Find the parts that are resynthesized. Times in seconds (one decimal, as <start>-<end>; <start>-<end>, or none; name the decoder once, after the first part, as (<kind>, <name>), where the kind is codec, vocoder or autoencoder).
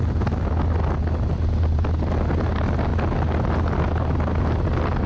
none